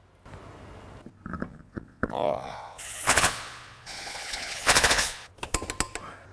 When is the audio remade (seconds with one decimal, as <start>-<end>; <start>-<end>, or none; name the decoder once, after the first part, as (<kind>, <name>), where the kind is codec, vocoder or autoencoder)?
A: 1.5-5.3 (vocoder, Vocos)